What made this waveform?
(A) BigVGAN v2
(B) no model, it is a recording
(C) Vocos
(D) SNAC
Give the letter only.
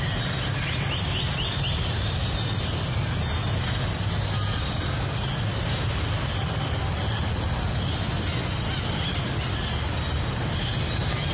B